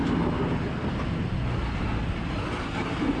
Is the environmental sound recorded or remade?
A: recorded